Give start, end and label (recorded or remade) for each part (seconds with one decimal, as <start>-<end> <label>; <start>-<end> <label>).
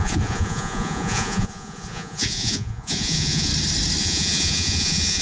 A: 0.0-3.5 remade; 3.5-4.0 recorded; 4.0-5.2 remade